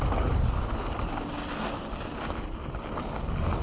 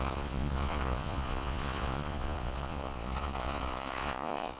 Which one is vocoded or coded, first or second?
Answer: second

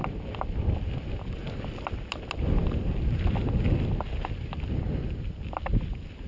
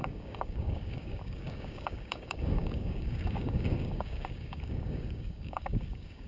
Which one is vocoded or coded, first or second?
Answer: second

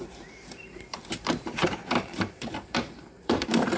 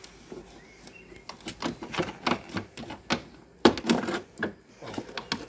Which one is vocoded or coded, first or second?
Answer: first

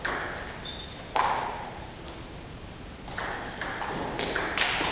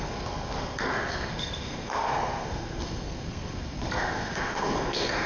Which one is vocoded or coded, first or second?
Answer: second